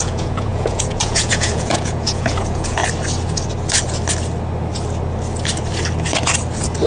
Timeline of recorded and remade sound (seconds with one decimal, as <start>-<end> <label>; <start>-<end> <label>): 0.0-2.8 remade; 2.8-6.9 recorded